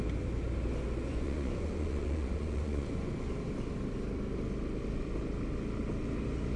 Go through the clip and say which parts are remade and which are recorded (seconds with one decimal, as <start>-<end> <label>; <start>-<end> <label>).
0.0-1.1 recorded; 1.1-3.1 remade; 3.1-6.6 recorded